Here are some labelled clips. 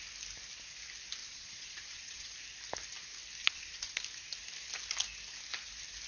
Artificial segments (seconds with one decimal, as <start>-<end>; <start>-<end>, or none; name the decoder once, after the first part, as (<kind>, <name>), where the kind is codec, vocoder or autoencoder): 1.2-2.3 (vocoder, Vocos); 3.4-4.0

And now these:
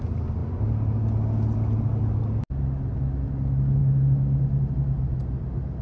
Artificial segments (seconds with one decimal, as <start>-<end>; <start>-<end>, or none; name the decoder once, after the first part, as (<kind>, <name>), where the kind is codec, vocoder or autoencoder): none

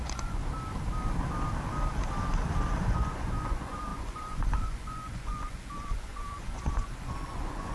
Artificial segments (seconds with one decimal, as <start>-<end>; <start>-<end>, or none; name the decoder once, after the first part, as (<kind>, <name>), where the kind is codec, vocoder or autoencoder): 0.0-0.4 (vocoder, Vocos); 2.7-7.7